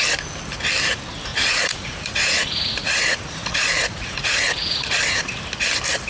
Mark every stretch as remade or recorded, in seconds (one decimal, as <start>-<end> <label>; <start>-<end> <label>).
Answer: 0.0-1.3 recorded; 1.3-5.0 remade; 5.0-6.1 recorded